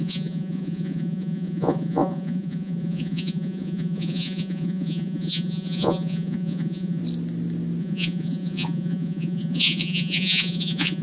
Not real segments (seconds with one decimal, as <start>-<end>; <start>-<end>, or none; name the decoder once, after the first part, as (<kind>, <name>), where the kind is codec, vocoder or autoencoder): 0.0-7.0 (vocoder, Vocos); 7.8-11.0